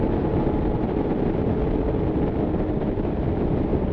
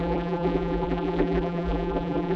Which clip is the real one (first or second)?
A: first